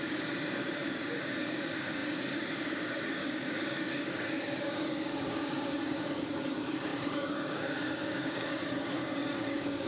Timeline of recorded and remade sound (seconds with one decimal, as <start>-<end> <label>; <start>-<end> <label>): 0.0-9.9 remade